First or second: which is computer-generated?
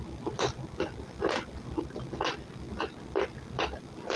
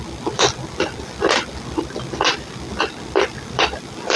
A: second